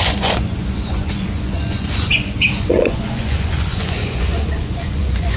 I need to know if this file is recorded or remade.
remade